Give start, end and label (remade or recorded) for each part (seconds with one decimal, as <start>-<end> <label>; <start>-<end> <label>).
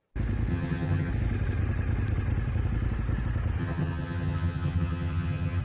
0.0-0.5 recorded; 0.5-1.1 remade; 1.1-3.6 recorded; 3.6-5.6 remade